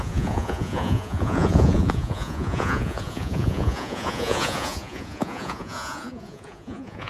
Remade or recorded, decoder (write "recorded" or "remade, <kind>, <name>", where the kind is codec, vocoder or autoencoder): remade, vocoder, Vocos